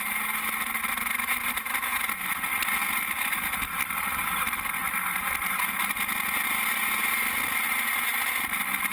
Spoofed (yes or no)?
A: no